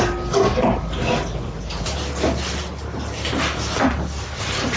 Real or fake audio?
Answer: real